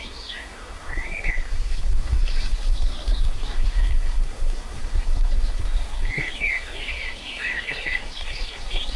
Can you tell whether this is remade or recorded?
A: remade